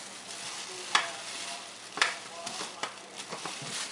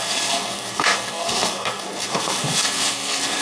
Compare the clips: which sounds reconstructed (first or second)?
second